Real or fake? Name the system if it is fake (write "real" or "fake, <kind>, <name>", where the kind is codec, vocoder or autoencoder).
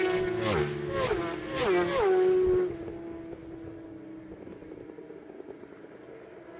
real